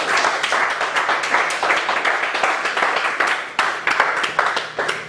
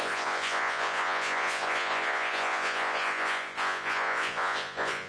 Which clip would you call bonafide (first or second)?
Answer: first